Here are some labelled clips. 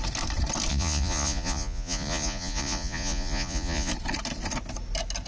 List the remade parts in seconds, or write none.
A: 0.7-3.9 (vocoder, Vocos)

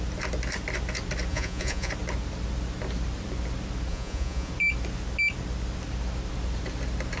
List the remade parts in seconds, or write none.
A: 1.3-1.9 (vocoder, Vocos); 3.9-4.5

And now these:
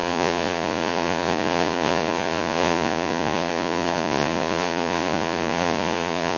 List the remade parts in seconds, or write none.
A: 0.0-6.4 (vocoder, Vocos)

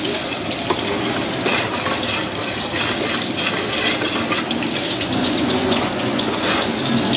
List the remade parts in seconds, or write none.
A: 0.0-0.4 (vocoder, Vocos); 4.7-6.7

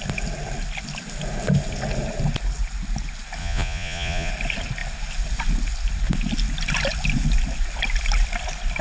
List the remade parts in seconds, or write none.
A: 3.4-4.3 (vocoder, Vocos)

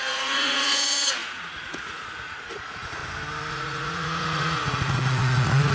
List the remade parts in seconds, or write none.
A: 0.0-3.0 (vocoder, Vocos); 3.5-5.7